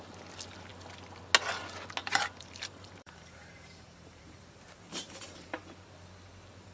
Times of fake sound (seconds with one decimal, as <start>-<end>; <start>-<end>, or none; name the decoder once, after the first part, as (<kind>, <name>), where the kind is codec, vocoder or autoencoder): 2.0-4.4 (vocoder, BigVGAN v2); 4.9-5.6